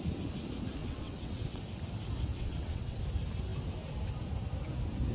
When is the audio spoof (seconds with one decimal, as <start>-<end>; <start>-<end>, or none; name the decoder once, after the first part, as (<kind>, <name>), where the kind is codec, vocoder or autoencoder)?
0.8-1.6 (vocoder, WaveNeXt); 2.3-3.0